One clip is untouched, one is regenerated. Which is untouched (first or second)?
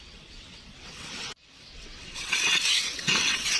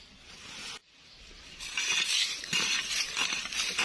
second